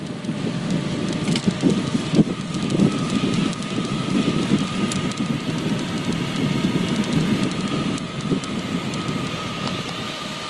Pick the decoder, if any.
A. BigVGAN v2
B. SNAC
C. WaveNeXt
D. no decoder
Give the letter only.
D